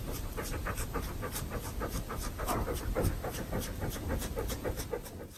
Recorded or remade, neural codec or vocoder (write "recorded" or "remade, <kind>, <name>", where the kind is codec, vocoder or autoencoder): recorded